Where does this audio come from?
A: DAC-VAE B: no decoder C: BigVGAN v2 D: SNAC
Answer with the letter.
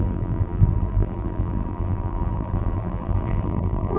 C